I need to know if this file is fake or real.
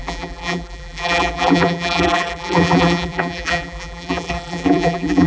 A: fake